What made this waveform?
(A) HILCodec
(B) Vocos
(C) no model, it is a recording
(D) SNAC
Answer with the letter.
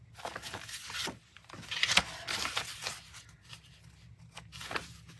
C